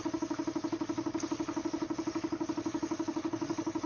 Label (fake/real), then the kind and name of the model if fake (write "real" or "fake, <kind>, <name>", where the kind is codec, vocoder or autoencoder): real